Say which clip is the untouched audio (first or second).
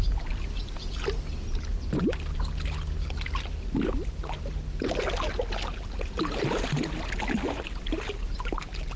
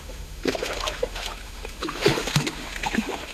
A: first